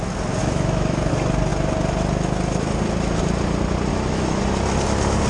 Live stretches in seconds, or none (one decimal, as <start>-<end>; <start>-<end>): 0.0-0.4; 1.1-3.9; 4.4-5.3